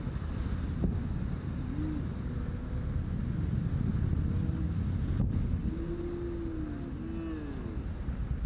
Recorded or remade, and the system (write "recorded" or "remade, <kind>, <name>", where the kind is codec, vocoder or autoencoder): recorded